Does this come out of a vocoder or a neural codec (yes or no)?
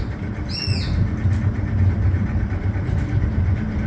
no